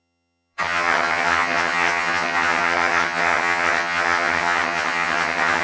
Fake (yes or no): yes